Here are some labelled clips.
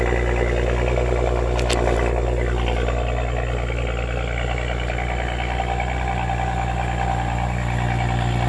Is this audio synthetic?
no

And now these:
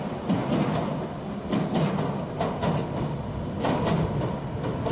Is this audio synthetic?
no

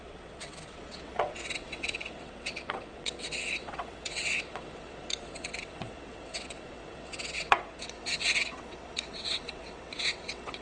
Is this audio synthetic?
yes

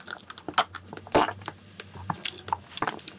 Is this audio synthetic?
no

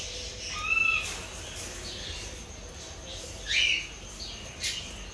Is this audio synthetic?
no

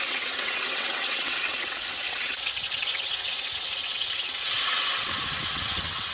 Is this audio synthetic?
yes